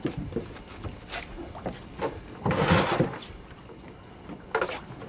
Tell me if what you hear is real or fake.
real